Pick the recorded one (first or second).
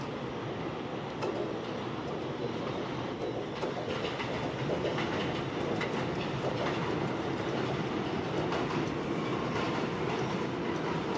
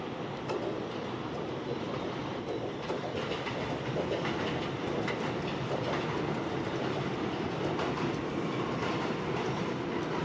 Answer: first